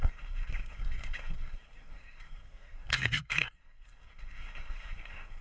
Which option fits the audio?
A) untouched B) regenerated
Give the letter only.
B